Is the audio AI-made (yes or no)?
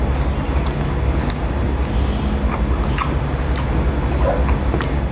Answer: no